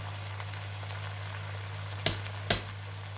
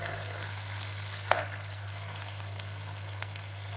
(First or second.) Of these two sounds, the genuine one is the first